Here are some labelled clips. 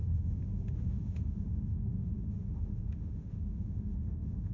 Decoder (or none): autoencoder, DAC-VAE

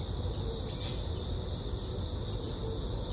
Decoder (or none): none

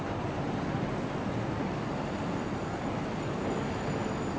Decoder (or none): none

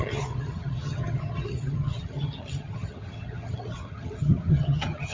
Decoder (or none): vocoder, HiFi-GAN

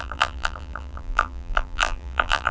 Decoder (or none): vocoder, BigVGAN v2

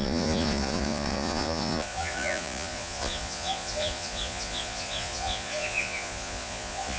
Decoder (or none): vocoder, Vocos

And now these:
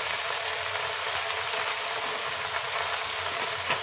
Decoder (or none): none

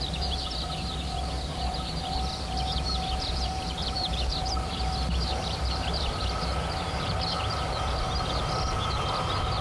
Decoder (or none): vocoder, BigVGAN v2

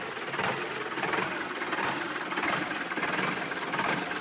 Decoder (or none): none